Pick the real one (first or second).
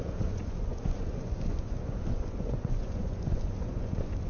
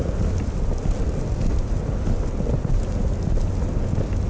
second